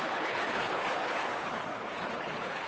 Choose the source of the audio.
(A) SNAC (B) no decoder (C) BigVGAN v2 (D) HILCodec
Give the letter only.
D